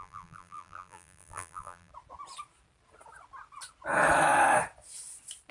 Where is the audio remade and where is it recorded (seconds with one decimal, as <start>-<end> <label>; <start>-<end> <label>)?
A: 0.0-1.9 remade; 1.9-5.5 recorded